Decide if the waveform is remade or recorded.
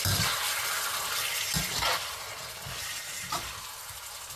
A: recorded